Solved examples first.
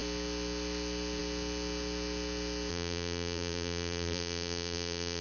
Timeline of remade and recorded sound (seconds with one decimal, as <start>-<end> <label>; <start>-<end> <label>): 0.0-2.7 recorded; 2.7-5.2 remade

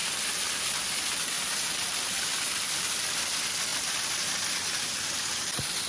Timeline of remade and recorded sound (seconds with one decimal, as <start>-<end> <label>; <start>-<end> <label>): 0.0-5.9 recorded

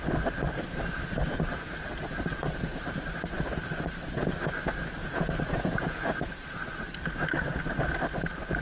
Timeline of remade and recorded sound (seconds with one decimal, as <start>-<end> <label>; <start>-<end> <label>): 0.0-5.0 recorded; 5.0-6.2 remade; 6.2-8.6 recorded

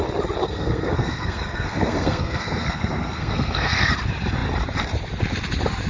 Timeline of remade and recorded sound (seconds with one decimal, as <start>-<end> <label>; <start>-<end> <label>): 0.0-0.4 recorded; 0.4-3.9 remade; 3.9-5.9 recorded

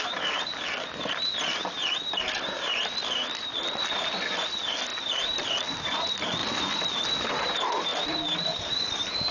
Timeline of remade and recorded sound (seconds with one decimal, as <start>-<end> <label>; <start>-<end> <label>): 0.0-4.9 recorded; 4.9-5.6 remade; 5.6-7.9 recorded; 7.9-9.3 remade

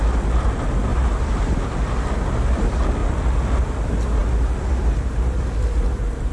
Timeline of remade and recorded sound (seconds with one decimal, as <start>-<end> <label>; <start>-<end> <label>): 0.0-0.9 recorded; 0.9-1.6 remade; 1.6-6.3 recorded

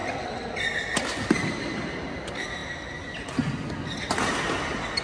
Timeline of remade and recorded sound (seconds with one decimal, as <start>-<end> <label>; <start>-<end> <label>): 0.0-5.0 recorded